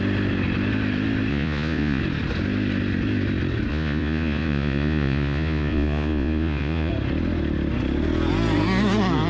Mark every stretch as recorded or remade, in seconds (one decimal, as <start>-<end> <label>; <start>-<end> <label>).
0.0-1.3 recorded; 1.3-2.0 remade; 2.0-3.7 recorded; 3.7-6.9 remade; 6.9-9.3 recorded